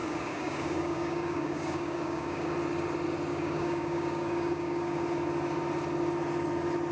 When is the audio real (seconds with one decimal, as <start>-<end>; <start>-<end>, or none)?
2.5-3.3; 5.0-6.9